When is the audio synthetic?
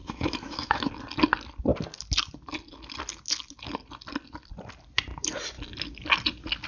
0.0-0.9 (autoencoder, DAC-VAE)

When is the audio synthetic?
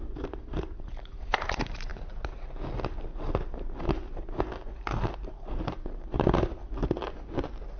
0.0-1.9 (vocoder, BigVGAN v2); 5.3-6.8